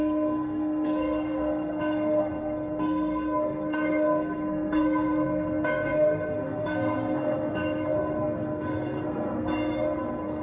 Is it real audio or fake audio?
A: fake